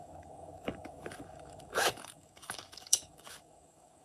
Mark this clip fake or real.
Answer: fake